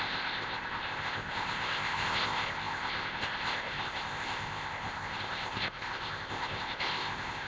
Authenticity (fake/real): fake